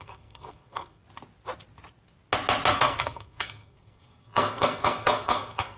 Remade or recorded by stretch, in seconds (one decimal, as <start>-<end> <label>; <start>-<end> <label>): 0.0-1.0 remade; 1.0-2.7 recorded; 2.7-5.8 remade